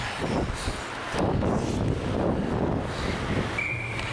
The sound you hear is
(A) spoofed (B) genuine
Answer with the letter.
B